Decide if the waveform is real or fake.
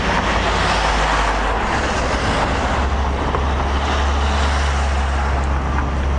real